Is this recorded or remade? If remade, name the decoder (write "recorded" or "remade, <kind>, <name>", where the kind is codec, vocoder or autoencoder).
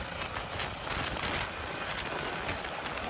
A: recorded